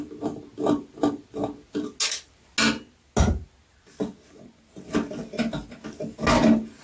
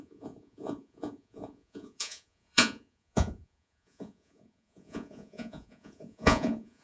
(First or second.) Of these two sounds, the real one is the first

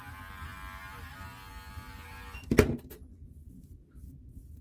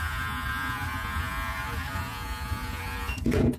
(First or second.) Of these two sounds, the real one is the first